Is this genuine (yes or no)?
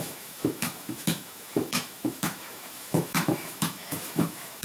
no